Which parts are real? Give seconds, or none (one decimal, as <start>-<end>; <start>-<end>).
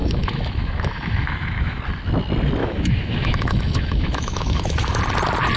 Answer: 1.8-2.6; 5.0-5.6